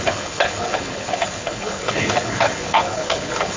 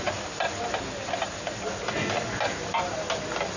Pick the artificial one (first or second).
first